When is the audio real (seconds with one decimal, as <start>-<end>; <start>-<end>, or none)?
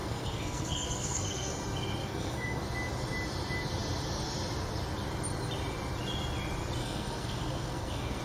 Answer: 1.5-2.0; 2.6-6.8